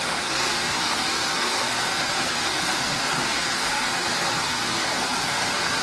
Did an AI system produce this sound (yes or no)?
yes